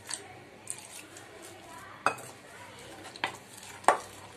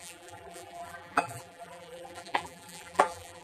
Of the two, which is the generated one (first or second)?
second